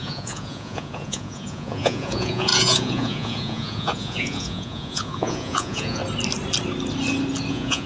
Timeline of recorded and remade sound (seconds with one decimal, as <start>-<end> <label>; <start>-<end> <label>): 0.0-6.0 remade; 6.0-7.5 recorded; 7.5-7.9 remade